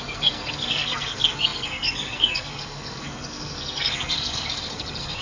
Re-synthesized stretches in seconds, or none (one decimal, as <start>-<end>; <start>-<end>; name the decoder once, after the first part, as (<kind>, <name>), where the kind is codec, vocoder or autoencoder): 0.0-5.2 (codec, SNAC)